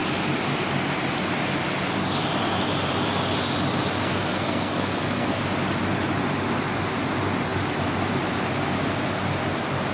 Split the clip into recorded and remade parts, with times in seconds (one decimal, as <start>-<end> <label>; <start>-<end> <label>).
0.0-4.0 recorded; 4.0-5.4 remade; 5.4-9.9 recorded